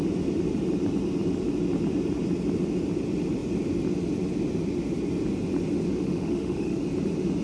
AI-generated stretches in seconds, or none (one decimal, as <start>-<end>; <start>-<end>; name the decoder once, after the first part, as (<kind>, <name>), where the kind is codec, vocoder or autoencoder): 5.9-6.8 (autoencoder, DAC-VAE)